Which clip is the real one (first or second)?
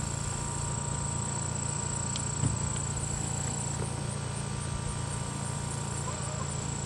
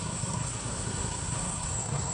first